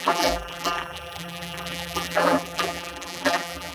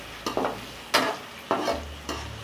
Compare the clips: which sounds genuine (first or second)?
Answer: second